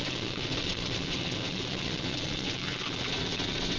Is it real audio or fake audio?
fake